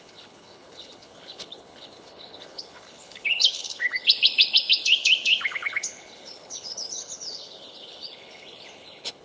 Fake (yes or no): yes